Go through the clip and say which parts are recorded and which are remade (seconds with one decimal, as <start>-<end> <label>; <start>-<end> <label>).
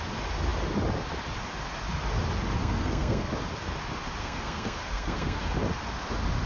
0.0-2.6 recorded; 2.6-3.3 remade; 3.3-4.2 recorded; 4.2-5.4 remade; 5.4-6.5 recorded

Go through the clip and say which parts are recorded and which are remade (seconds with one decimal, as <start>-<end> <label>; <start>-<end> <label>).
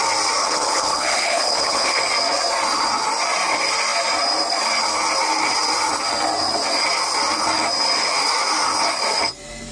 0.0-0.4 recorded; 0.4-2.0 remade; 2.0-9.7 recorded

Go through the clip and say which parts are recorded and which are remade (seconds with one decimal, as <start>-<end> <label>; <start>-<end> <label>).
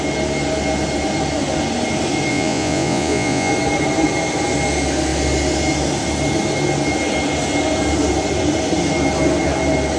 0.0-2.3 recorded; 2.3-3.5 remade; 3.5-10.0 recorded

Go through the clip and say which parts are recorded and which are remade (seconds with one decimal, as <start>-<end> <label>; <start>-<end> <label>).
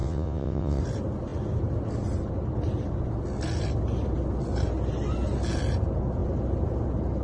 0.0-0.8 remade; 0.8-7.2 recorded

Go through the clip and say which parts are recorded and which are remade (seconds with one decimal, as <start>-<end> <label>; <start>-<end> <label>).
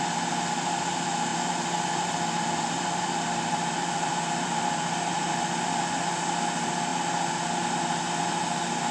0.0-1.3 recorded; 1.3-5.3 remade; 5.3-8.9 recorded